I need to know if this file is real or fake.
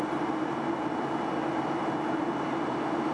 real